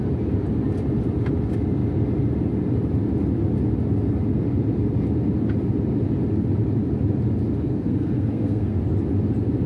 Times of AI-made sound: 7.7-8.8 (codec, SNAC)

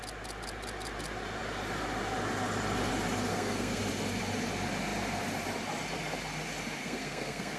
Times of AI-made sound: 3.3-3.8 (codec, SNAC); 6.8-7.6